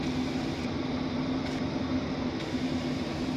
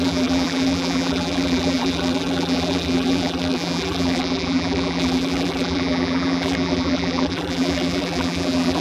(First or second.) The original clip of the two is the first